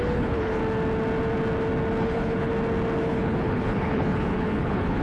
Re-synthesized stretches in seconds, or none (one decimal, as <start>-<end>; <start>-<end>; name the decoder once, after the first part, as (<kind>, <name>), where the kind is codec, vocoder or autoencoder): 0.0-0.6 (codec, HILCodec); 2.0-2.5; 3.0-5.0